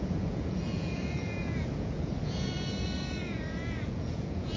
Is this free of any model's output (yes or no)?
no